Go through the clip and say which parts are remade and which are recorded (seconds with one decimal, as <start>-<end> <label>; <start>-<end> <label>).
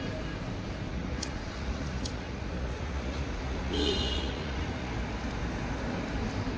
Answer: 0.0-0.9 recorded; 0.9-4.9 remade; 4.9-6.6 recorded